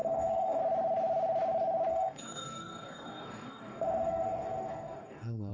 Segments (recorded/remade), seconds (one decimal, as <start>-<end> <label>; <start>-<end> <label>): 0.0-0.6 remade; 0.6-1.9 recorded; 1.9-5.5 remade